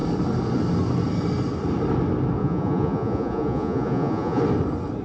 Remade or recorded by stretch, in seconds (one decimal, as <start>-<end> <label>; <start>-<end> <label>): 0.0-2.4 recorded; 2.4-4.4 remade; 4.4-5.0 recorded